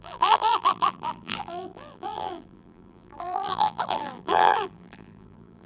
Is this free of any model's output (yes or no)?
no